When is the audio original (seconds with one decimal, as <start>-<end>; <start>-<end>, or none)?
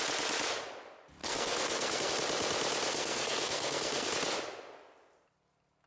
0.0-1.2; 2.1-2.9; 4.1-5.9